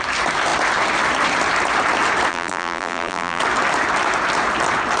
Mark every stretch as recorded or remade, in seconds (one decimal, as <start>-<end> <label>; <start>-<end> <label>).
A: 0.0-2.3 recorded; 2.3-3.4 remade; 3.4-5.0 recorded